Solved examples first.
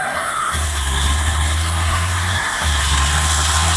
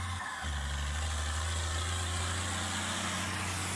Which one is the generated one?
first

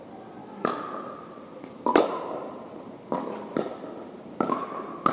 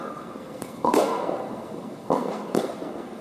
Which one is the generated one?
second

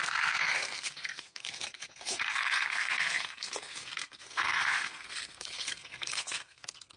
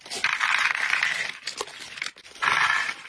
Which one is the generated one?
first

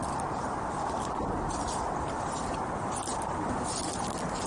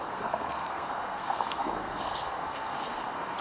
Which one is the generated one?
second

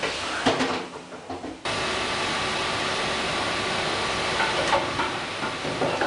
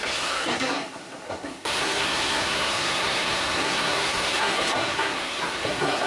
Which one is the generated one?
second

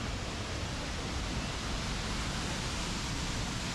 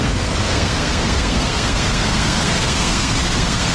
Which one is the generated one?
second